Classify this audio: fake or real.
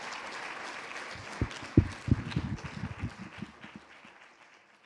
real